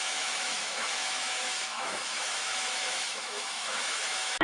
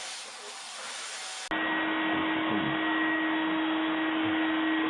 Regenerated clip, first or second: first